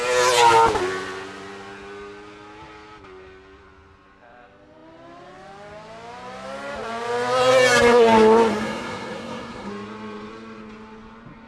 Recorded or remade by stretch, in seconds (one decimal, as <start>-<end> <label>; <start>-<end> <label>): 0.0-8.5 recorded; 8.5-9.7 remade; 9.7-11.5 recorded